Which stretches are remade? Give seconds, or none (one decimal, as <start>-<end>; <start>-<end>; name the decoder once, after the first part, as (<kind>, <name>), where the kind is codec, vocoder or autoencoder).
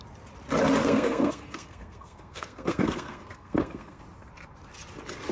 0.8-4.0 (codec, SNAC)